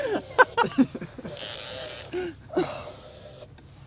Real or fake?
real